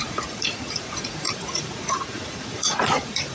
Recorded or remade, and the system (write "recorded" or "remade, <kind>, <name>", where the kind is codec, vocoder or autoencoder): remade, vocoder, Vocos